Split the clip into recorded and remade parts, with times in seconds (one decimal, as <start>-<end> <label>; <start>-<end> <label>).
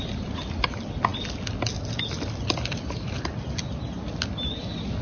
0.0-5.0 recorded